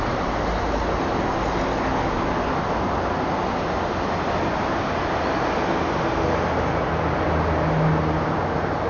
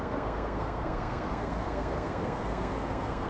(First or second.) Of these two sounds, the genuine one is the first